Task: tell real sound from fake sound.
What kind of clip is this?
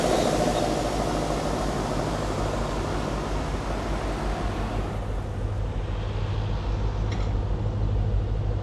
real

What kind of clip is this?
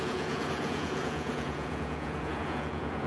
fake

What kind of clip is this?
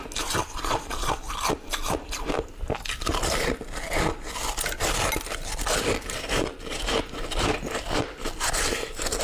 real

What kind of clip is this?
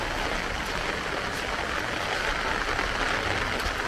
real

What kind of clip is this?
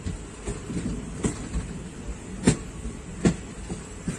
real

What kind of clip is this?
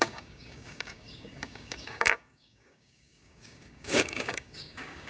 fake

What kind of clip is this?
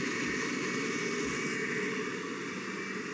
real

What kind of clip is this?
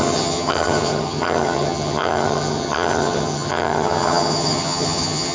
fake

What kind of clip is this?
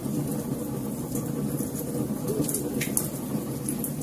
real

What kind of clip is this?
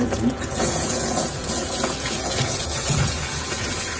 fake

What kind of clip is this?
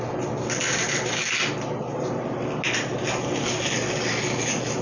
real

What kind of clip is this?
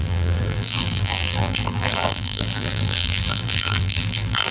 fake